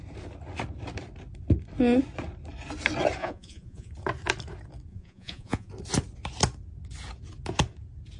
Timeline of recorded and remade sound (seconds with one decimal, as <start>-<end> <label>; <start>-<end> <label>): 0.0-3.2 recorded; 3.2-3.9 remade; 3.9-4.9 recorded; 4.9-5.7 remade; 5.7-8.2 recorded